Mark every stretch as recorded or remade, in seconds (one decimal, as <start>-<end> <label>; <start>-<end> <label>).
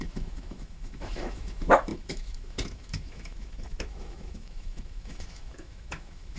0.0-6.4 remade